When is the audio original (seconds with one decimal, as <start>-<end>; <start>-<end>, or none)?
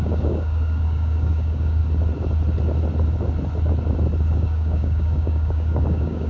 1.8-4.3